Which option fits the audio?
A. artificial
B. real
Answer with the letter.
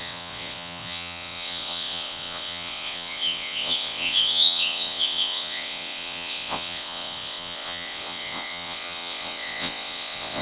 A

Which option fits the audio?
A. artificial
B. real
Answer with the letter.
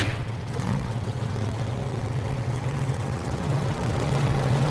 A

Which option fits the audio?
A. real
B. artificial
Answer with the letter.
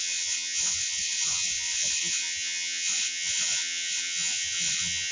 B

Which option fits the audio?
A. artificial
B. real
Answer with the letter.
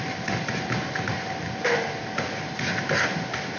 B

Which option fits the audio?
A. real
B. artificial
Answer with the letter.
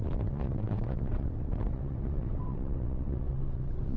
B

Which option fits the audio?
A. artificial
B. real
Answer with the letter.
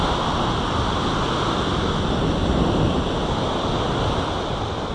B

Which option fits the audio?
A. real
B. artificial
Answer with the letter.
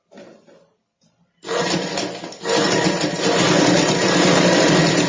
A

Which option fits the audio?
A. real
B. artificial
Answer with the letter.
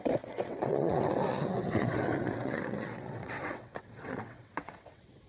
B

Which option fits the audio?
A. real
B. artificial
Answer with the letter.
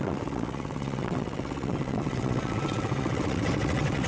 B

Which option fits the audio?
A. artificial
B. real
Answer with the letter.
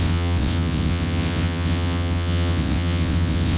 A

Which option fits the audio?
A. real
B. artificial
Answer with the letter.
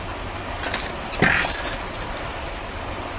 A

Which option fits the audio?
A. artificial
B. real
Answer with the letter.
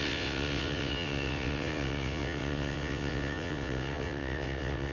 A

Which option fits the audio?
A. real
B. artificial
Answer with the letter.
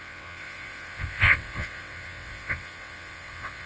B